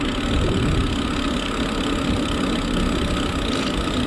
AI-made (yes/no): no